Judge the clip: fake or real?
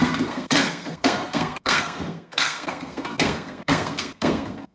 fake